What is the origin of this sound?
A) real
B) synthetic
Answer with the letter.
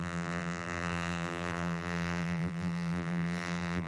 B